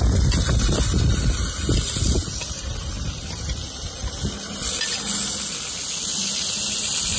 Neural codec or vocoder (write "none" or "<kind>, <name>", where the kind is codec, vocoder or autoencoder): none